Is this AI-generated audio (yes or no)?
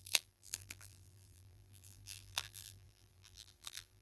yes